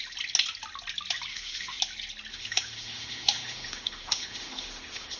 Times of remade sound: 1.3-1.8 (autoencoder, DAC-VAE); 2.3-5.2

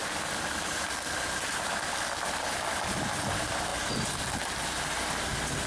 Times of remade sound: none

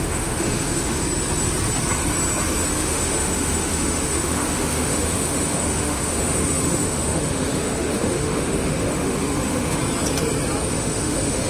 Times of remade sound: 0.0-1.0 (autoencoder, DAC-VAE); 2.8-9.8; 10.7-11.5